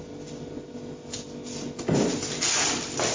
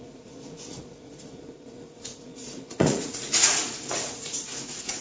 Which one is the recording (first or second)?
first